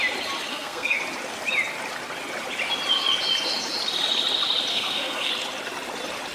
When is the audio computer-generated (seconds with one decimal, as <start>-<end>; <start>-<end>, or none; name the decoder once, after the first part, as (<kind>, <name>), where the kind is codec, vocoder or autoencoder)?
0.5-1.0 (codec, SNAC); 4.7-5.3